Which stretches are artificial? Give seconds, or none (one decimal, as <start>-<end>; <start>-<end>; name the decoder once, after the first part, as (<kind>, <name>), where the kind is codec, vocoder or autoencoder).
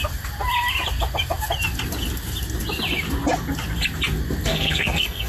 4.5-5.3 (codec, SNAC)